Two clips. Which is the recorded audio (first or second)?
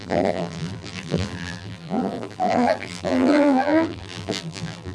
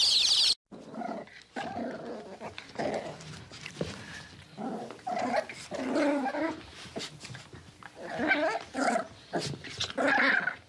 second